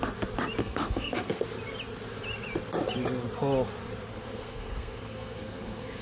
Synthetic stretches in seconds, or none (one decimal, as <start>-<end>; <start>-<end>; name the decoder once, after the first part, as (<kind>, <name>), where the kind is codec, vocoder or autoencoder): 0.6-1.4 (codec, SNAC); 4.1-6.0